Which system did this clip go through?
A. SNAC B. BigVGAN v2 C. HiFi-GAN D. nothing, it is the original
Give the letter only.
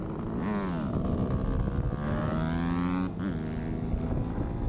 D